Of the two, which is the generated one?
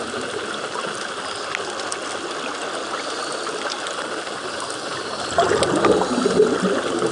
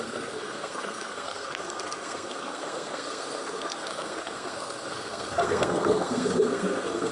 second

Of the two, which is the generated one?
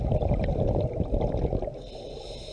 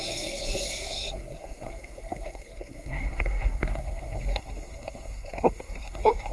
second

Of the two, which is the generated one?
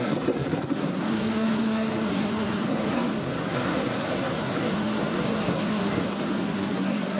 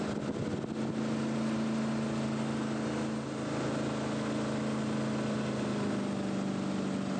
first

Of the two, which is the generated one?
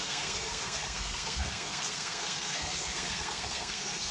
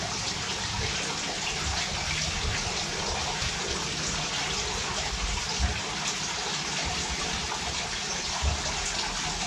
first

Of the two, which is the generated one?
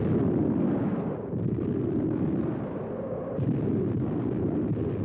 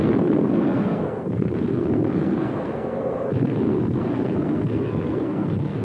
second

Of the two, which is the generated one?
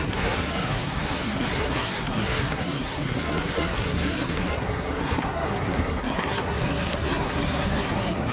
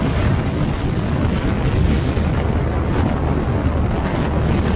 first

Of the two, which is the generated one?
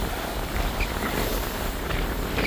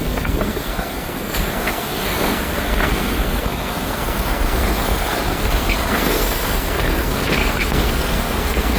second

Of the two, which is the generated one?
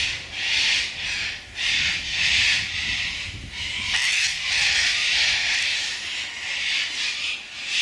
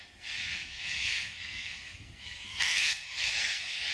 second